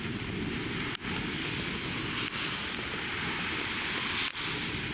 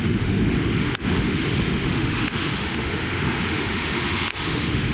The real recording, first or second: first